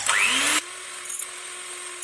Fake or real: real